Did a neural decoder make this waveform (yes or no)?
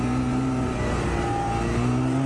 yes